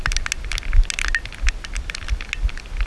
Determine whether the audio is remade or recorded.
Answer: recorded